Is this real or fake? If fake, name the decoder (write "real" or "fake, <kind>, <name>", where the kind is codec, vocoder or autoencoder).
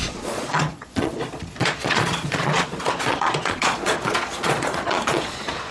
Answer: fake, vocoder, Vocos